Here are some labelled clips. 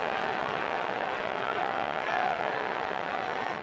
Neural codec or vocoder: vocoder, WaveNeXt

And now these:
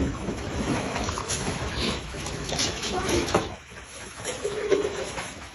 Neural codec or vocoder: autoencoder, DAC-VAE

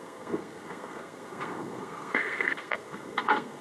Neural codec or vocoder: codec, SNAC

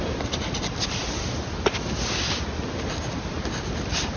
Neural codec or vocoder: none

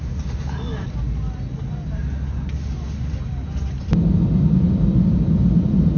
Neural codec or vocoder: none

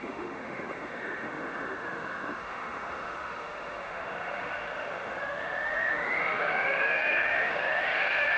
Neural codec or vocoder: autoencoder, DAC-VAE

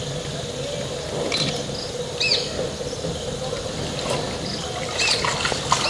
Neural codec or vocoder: none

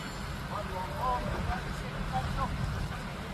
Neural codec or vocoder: none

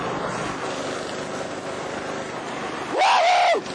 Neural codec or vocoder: none